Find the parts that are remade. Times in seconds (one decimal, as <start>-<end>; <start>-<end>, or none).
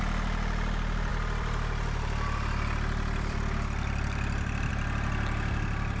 1.1-4.7